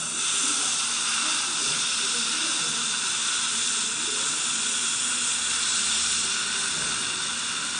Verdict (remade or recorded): recorded